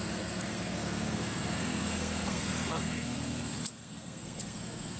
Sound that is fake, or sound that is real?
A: fake